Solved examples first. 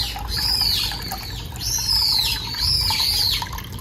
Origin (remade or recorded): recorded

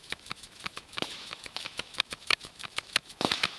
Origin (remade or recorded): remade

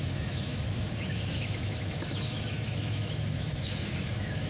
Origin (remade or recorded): remade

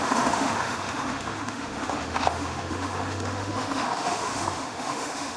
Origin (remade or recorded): remade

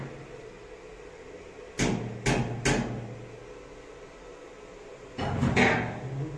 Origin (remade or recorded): recorded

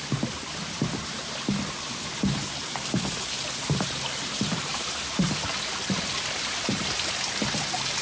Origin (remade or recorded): recorded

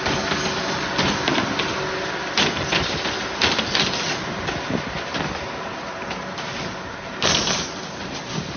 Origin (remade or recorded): recorded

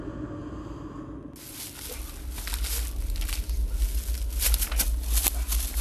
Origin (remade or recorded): recorded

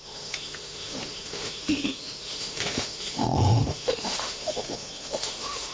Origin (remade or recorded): remade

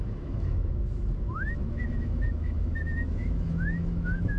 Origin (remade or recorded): remade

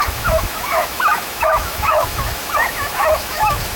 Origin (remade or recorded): remade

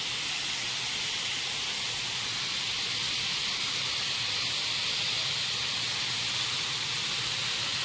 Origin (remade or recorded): recorded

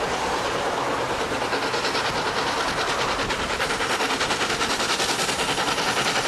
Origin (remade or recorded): recorded